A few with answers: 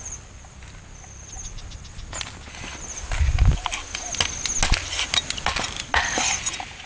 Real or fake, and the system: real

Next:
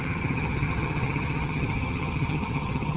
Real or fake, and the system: fake, vocoder, HiFi-GAN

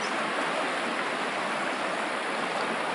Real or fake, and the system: real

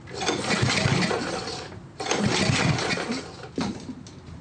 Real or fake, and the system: real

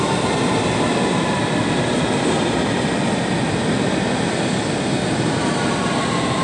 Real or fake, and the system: fake, vocoder, BigVGAN v2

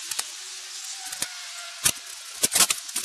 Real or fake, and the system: fake, vocoder, Vocos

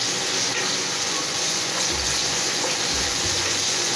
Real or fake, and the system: fake, vocoder, Vocos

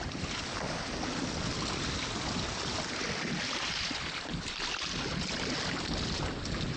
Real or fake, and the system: real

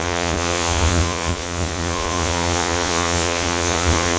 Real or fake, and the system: fake, vocoder, Vocos